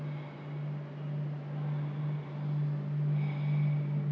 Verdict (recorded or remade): recorded